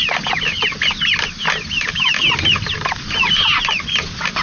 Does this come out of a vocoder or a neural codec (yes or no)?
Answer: no